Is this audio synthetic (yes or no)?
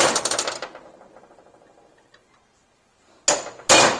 no